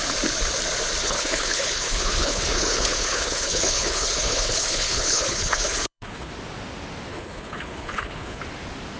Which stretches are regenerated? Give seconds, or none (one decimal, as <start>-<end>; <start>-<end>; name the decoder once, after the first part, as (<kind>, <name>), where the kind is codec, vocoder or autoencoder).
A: 1.0-6.3 (codec, HILCodec); 7.1-8.4